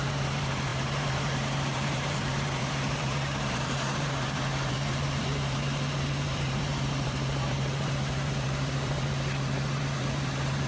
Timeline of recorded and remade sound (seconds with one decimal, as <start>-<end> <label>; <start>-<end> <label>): 0.0-10.7 remade